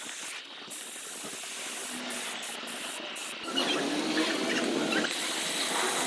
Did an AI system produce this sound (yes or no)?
no